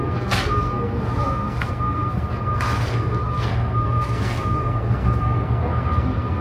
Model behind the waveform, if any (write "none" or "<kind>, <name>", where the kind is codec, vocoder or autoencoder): codec, SNAC